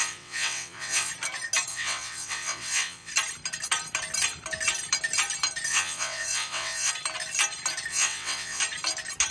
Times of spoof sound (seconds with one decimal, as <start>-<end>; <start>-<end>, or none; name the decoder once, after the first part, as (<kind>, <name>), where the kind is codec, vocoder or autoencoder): 0.0-1.1 (vocoder, WaveNeXt); 1.7-3.1; 5.7-6.9; 7.9-8.6